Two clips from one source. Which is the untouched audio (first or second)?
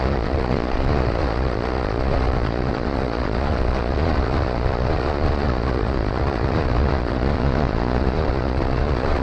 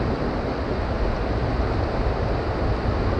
second